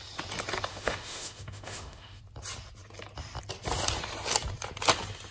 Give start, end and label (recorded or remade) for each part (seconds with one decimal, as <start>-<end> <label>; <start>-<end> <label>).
0.0-0.7 recorded; 0.7-2.2 remade; 2.2-5.3 recorded